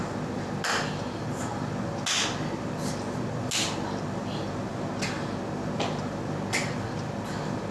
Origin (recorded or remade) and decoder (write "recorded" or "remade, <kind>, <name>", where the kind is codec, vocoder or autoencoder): recorded